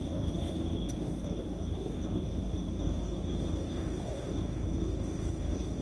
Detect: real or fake fake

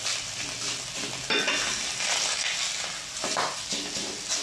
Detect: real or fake real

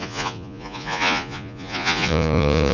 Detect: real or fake fake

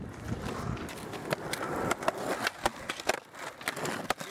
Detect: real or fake real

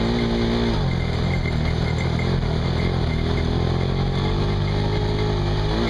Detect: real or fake real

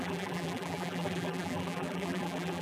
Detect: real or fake fake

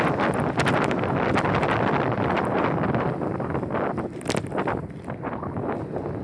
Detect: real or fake fake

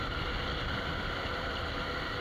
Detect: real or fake fake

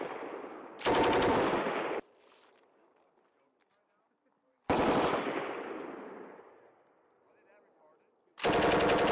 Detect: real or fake real